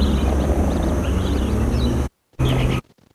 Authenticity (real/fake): real